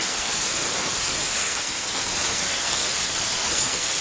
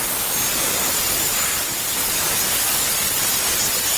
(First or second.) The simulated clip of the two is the first